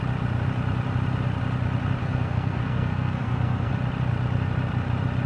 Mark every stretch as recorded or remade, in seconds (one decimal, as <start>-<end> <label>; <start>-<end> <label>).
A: 0.0-2.0 recorded; 2.0-3.7 remade; 3.7-5.3 recorded

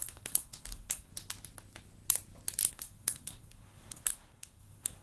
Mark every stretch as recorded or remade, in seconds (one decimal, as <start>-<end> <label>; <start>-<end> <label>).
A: 0.0-1.1 remade; 1.1-2.7 recorded; 2.7-5.0 remade

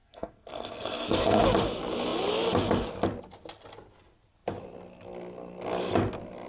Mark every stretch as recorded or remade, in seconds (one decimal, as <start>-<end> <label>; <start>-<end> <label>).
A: 0.0-1.4 remade; 1.4-6.5 recorded

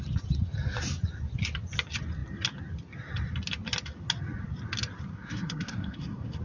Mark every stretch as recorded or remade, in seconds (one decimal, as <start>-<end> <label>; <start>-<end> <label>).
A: 0.0-5.1 recorded; 5.1-6.4 remade